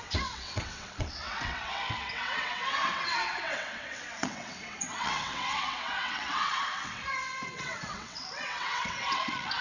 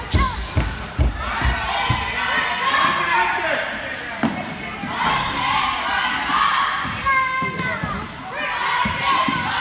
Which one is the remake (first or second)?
first